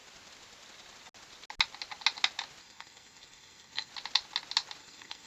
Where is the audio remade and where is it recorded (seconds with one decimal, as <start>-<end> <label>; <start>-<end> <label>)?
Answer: 0.0-2.6 recorded; 2.6-3.9 remade; 3.9-4.8 recorded; 4.8-5.3 remade